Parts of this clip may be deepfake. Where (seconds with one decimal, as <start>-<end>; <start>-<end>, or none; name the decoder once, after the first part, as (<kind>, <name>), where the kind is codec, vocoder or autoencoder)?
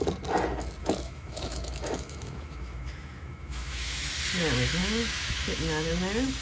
0.8-4.1 (autoencoder, DAC-VAE); 4.8-5.9